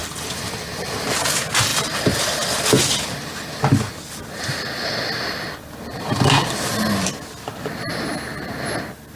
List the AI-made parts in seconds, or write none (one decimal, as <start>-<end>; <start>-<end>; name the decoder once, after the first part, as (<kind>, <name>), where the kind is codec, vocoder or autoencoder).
0.0-1.0 (vocoder, BigVGAN v2); 1.7-6.7